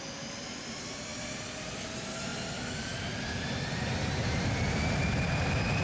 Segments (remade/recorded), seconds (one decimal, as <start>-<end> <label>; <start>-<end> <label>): 0.0-5.8 recorded